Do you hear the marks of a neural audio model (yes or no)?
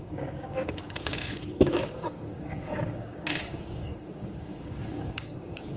yes